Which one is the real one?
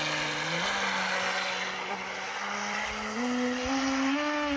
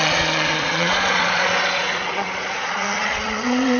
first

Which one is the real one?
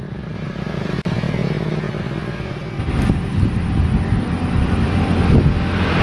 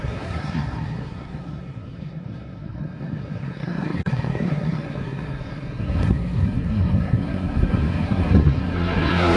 first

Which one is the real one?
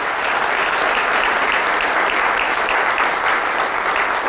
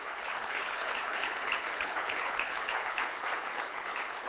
first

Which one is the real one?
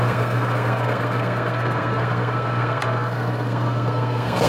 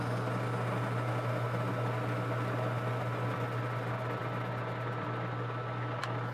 second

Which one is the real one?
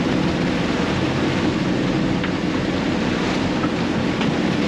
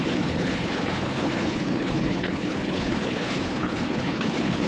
first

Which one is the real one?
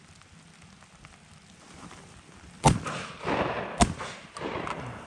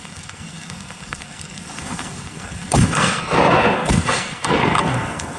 first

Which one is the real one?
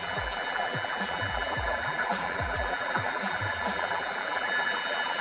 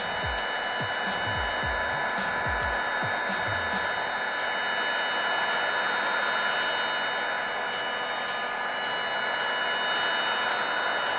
second